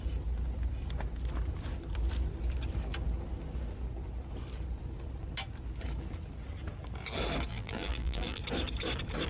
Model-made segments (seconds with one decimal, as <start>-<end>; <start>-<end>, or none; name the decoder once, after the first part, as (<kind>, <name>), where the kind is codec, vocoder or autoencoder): 7.5-8.4 (vocoder, BigVGAN v2)